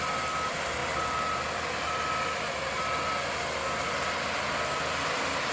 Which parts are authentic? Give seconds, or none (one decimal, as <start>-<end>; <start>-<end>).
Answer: 0.0-5.5